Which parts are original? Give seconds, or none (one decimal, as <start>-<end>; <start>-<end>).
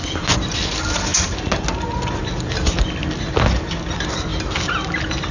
0.0-5.3